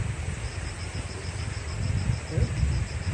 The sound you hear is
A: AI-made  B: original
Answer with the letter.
B